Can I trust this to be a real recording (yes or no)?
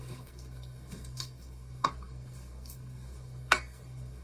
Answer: no